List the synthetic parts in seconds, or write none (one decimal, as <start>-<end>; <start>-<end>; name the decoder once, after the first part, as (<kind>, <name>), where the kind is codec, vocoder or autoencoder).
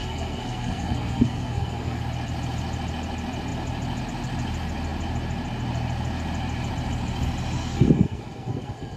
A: 0.0-2.0 (codec, SNAC); 7.6-9.0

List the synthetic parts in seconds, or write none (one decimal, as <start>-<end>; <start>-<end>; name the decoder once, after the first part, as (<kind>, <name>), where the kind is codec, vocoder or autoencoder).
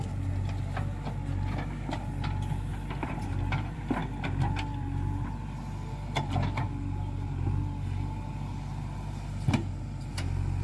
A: 2.7-4.0 (vocoder, BigVGAN v2)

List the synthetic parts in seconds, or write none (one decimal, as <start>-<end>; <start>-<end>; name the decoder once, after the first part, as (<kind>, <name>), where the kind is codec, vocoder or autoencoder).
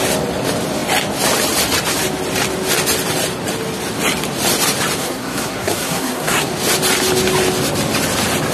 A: 5.0-6.5 (codec, SNAC)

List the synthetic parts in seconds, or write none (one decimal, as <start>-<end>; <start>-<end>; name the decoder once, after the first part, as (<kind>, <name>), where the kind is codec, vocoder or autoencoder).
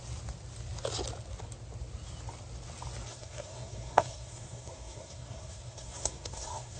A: 3.1-6.8 (codec, SNAC)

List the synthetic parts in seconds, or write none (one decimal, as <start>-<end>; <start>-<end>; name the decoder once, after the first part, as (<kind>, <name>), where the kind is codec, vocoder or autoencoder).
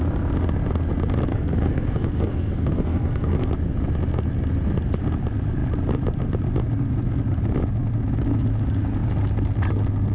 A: 1.3-3.5 (codec, SNAC)